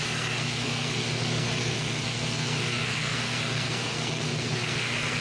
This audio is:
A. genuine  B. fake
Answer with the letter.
B